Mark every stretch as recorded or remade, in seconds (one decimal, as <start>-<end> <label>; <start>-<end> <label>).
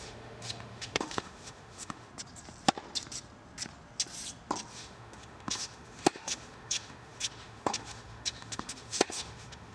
0.0-2.1 remade; 2.1-4.7 recorded; 4.7-9.7 remade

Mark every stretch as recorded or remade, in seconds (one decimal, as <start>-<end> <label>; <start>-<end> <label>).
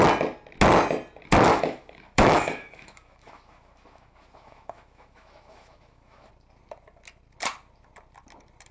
0.0-1.5 recorded; 1.5-6.3 remade; 6.3-8.7 recorded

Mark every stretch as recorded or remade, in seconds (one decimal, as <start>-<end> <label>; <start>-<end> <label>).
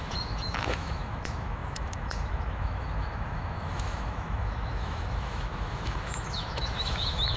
0.0-7.4 remade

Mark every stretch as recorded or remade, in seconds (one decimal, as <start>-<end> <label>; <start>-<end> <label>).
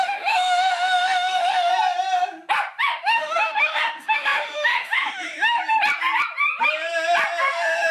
0.0-1.7 remade; 1.7-2.8 recorded; 2.8-5.6 remade; 5.6-7.4 recorded; 7.4-7.9 remade